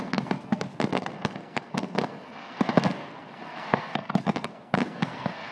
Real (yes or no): no